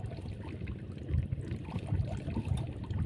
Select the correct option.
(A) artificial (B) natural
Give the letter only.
B